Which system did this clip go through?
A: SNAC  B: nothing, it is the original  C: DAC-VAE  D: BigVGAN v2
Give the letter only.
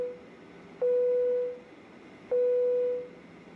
B